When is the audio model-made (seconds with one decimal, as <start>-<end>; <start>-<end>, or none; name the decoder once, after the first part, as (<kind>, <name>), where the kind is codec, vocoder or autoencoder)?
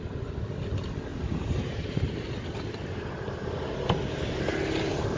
1.1-3.4 (vocoder, BigVGAN v2)